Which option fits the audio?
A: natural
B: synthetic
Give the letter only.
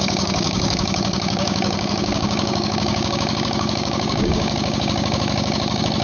B